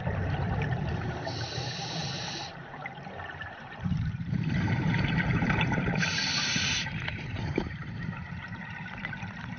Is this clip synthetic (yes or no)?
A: yes